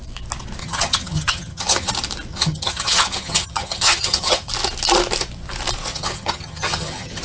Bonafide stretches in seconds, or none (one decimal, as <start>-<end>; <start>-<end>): 0.0-0.6; 1.9-2.3; 4.5-5.9